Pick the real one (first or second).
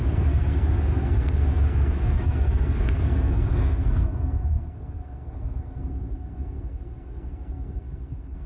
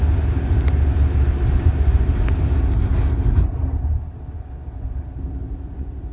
second